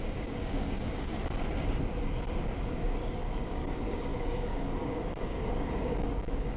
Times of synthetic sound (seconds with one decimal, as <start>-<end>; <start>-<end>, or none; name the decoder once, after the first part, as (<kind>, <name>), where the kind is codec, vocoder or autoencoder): 0.0-1.1 (codec, DAC); 2.7-6.6